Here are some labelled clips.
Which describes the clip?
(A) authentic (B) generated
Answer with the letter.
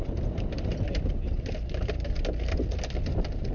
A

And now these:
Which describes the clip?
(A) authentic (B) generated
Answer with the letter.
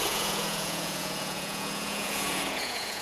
B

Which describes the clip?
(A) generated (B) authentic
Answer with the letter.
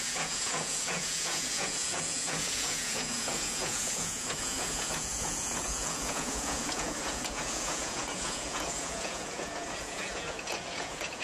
A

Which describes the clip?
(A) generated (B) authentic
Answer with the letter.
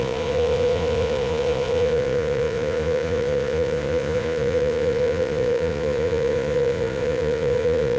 A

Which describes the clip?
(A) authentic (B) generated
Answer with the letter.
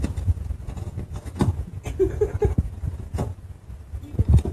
B